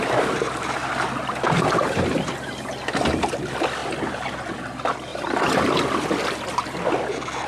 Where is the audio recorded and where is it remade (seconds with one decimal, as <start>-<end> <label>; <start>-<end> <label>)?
0.0-7.5 recorded